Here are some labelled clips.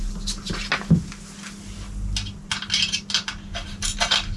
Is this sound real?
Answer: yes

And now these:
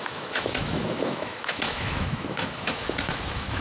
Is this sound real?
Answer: no